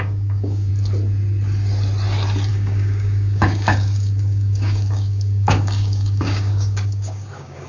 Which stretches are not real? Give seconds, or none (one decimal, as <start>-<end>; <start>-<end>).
0.0-0.7; 2.5-7.7